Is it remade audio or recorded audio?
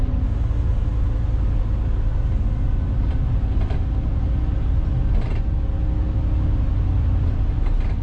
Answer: recorded